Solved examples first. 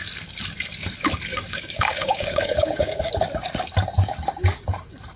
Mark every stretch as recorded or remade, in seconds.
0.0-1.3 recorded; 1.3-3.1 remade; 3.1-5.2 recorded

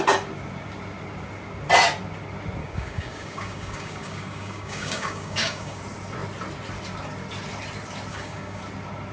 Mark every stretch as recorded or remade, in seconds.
0.0-2.6 recorded; 2.6-5.8 remade; 5.8-8.1 recorded; 8.1-8.6 remade; 8.6-9.1 recorded

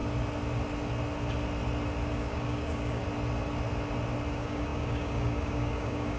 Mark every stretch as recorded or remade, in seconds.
0.0-2.1 recorded; 2.1-3.0 remade; 3.0-4.3 recorded; 4.3-6.2 remade

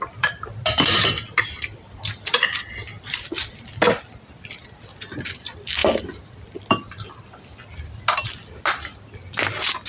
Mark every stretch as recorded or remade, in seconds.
0.0-9.9 recorded